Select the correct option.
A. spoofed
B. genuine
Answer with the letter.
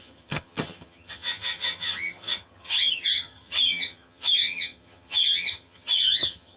A